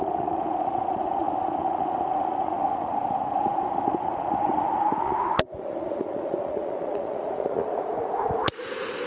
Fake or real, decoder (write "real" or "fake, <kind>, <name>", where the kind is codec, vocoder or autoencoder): fake, vocoder, Vocos